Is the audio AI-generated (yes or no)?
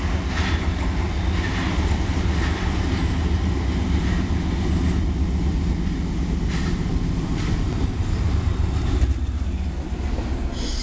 no